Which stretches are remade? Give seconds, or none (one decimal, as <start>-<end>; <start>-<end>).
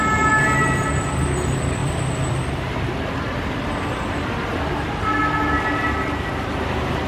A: 1.8-5.2